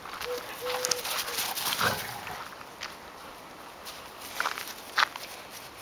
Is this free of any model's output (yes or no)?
yes